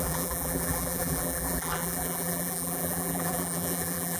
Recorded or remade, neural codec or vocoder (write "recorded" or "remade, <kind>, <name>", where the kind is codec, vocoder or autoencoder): remade, vocoder, BigVGAN v2